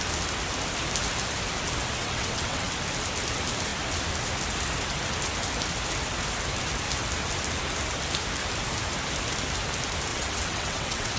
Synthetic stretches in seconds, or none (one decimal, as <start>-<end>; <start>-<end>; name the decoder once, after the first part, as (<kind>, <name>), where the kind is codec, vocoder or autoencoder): 2.0-2.7 (vocoder, WaveNeXt); 10.1-11.2